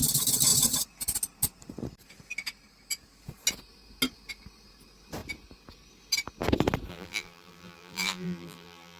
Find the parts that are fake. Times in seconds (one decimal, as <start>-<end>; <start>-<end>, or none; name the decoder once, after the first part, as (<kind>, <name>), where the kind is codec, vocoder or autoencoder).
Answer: 6.9-9.0 (vocoder, BigVGAN v2)

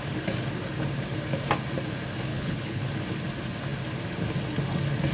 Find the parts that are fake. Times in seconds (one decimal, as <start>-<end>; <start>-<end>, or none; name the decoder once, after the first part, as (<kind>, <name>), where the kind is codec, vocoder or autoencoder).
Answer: 2.3-2.9 (codec, HILCodec)

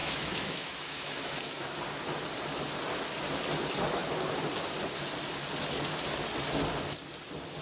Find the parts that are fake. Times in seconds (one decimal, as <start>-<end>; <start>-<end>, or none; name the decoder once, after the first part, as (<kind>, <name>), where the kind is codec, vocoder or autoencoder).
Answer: 0.0-1.8 (autoencoder, DAC-VAE)

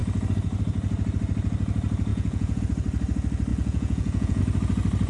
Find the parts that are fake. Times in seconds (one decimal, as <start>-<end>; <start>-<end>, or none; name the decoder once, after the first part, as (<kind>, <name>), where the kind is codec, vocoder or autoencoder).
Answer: 2.1-2.6 (vocoder, Vocos); 3.5-4.4